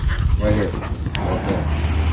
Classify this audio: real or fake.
real